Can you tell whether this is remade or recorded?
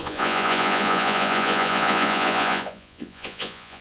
remade